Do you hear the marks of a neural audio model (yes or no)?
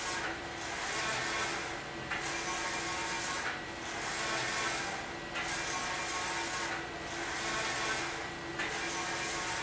no